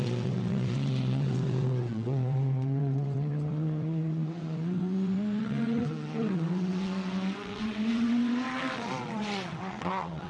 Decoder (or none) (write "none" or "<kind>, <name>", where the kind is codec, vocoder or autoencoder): vocoder, WaveNeXt